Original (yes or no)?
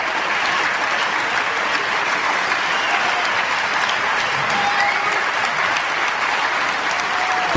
yes